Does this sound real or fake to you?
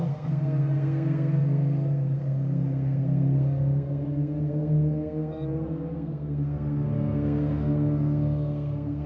fake